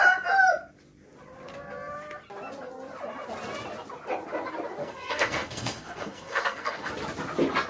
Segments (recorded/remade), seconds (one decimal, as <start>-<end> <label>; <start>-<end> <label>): 0.0-4.8 recorded; 4.8-6.9 remade; 6.9-7.7 recorded